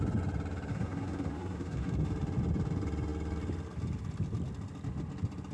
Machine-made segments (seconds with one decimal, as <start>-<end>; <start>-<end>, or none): 0.7-1.9